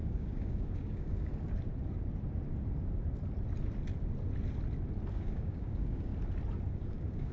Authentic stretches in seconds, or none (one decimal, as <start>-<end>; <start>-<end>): 1.3-5.1; 6.1-6.7